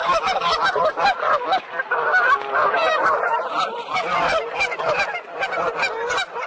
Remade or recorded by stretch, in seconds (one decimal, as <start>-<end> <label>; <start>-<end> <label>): 0.0-6.5 recorded